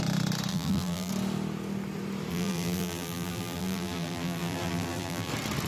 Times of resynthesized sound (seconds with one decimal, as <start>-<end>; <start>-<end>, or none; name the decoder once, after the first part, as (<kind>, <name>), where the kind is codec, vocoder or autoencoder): 0.5-1.1 (vocoder, BigVGAN v2); 2.3-5.3